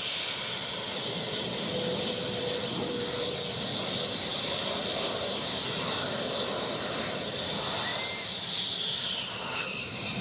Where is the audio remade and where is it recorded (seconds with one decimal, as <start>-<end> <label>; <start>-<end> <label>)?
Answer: 0.0-10.2 recorded